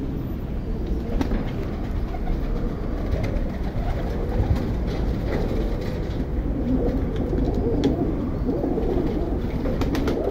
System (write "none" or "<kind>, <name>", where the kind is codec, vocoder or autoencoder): none